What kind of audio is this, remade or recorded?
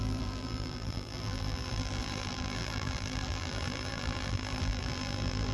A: remade